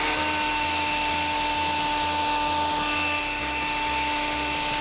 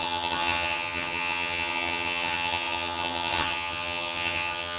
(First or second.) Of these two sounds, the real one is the first